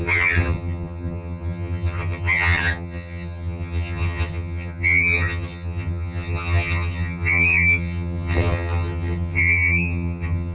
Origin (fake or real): fake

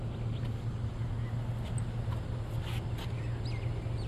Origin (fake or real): real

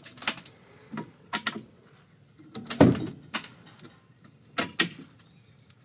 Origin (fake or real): real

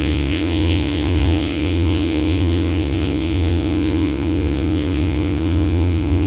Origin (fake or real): fake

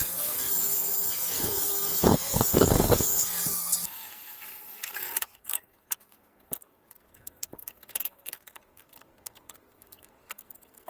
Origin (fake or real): fake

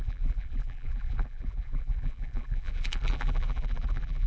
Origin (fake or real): fake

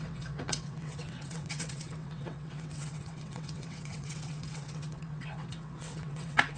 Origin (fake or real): fake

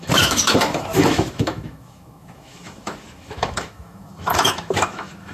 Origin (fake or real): fake